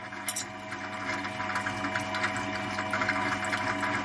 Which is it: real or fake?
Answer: real